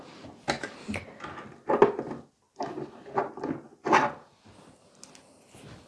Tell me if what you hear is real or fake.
real